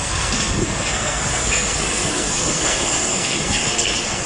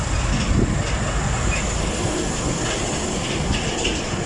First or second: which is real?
second